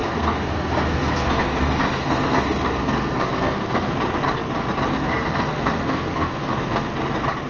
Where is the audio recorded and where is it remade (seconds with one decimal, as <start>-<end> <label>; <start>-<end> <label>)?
0.0-3.9 remade; 3.9-4.9 recorded; 4.9-6.9 remade; 6.9-7.5 recorded